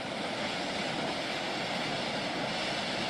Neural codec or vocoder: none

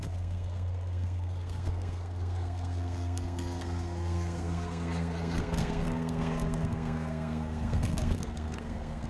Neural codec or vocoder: codec, SNAC